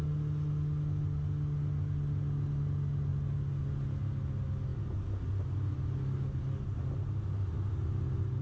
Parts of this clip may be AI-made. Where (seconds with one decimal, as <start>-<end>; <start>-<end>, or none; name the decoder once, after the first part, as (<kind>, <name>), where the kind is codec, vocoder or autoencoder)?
none